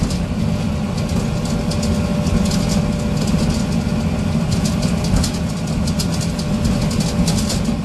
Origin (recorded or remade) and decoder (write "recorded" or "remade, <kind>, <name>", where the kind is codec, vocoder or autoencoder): recorded